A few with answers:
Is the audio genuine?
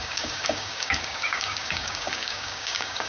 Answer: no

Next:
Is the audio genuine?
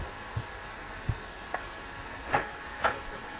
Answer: no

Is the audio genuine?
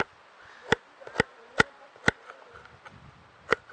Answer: yes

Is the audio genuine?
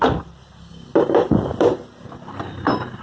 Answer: yes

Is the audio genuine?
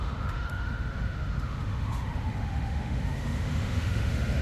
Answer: no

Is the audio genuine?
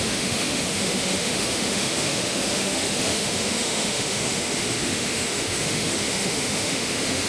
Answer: no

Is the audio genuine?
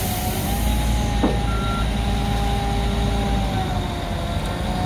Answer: yes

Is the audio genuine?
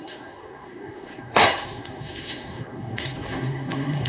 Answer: no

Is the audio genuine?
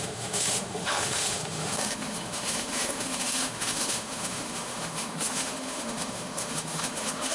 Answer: no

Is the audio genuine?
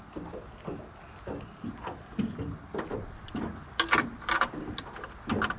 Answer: yes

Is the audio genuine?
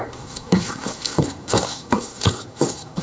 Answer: no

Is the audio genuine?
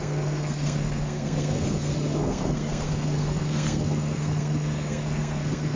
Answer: no